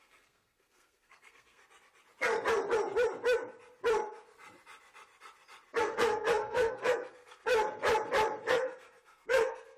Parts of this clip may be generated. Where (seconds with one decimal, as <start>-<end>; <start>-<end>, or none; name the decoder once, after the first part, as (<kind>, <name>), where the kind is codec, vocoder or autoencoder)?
0.0-1.6 (codec, SNAC); 5.8-7.5; 8.5-9.8